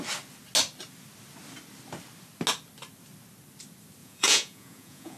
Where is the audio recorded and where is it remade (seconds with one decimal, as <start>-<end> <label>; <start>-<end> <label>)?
0.0-4.0 recorded; 4.0-5.2 remade